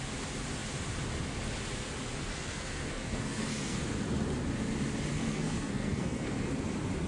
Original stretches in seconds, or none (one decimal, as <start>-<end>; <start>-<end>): 0.0-2.3; 3.8-5.1; 6.5-7.1